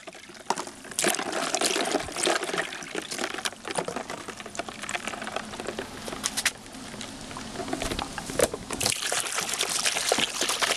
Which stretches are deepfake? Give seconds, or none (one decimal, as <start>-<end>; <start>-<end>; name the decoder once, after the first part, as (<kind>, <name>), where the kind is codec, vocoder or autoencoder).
8.4-8.9 (codec, DAC)